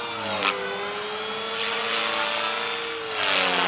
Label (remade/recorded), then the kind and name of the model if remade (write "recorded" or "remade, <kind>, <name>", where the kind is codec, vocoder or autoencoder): recorded